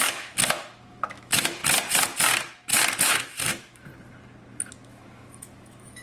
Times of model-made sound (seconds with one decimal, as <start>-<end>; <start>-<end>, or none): 0.0-1.6; 3.0-3.9; 4.7-6.0